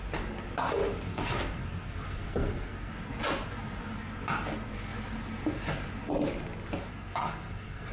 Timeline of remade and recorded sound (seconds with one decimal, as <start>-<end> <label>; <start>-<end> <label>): 0.0-1.1 recorded; 1.1-2.9 remade; 2.9-6.9 recorded; 6.9-7.9 remade